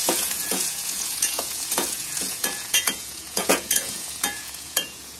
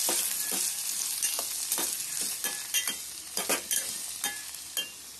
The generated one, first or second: first